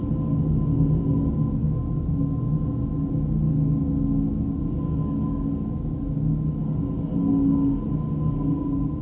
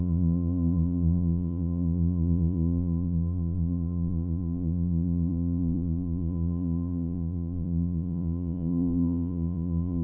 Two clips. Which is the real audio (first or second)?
first